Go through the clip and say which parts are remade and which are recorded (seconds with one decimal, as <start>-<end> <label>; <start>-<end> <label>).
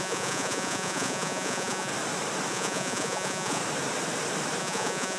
0.0-1.9 remade; 1.9-2.5 recorded; 2.5-3.6 remade; 3.6-4.6 recorded; 4.6-5.2 remade